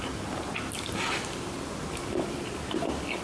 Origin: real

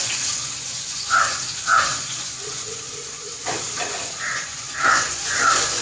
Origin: fake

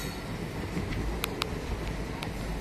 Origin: real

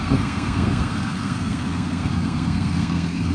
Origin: fake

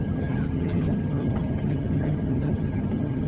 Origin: fake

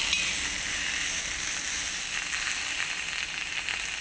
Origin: real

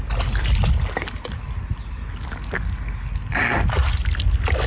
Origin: real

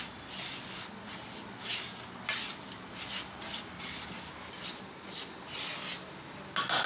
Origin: real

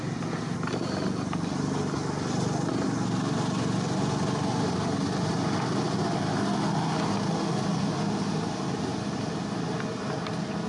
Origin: real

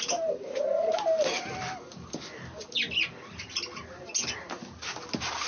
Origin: real